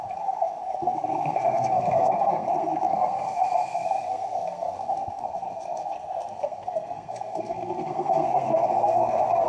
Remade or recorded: remade